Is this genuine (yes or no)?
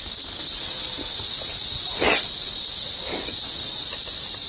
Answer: yes